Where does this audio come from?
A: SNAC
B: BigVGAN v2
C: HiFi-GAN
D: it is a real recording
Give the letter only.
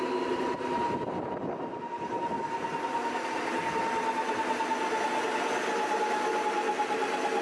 D